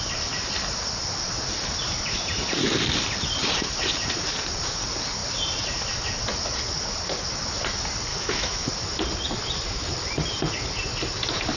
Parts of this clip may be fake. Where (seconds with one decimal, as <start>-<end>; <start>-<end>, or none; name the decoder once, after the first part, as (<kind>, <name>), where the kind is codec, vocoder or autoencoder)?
8.1-8.7 (autoencoder, DAC-VAE)

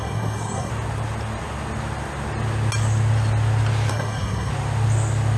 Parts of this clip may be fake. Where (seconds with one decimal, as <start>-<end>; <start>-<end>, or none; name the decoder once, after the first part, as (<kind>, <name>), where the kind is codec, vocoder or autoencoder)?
0.0-0.7 (codec, SNAC); 3.9-4.5

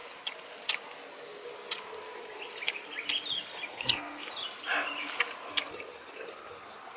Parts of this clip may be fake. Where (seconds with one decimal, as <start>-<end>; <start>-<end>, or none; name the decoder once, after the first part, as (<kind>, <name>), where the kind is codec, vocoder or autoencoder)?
3.7-4.3 (codec, SNAC)

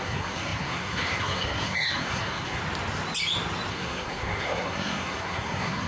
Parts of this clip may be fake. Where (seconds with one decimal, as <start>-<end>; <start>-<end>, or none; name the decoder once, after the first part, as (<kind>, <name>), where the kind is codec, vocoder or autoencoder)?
0.0-2.6 (codec, SNAC); 3.7-5.9

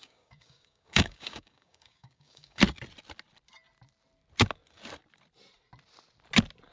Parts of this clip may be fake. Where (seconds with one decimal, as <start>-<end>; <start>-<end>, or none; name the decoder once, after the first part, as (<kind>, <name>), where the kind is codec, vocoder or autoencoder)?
0.0-2.6 (codec, DAC)

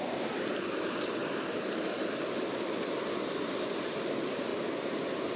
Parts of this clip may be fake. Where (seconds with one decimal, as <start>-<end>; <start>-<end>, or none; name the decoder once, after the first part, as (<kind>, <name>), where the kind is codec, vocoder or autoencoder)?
none

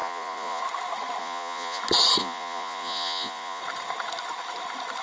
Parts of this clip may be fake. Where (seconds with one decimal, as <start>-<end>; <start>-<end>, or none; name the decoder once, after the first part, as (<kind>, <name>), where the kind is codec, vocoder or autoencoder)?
0.0-0.6 (vocoder, Vocos); 1.2-1.8; 2.2-3.6